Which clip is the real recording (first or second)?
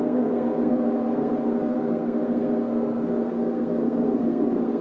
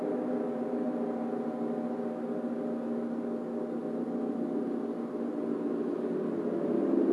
second